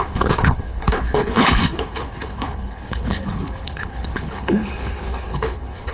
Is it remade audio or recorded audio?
remade